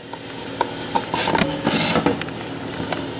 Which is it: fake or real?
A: real